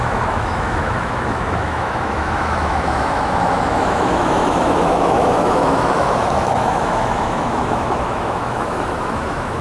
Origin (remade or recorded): remade